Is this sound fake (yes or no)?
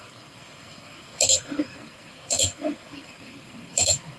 yes